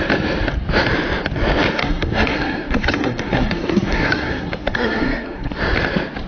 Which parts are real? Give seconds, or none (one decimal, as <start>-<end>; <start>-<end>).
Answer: 0.0-1.8; 5.6-6.3